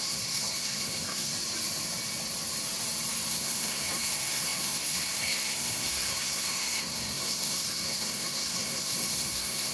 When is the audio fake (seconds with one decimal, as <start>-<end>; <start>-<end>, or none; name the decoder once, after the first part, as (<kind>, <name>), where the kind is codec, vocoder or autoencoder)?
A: 0.0-1.3 (codec, SNAC); 3.3-9.7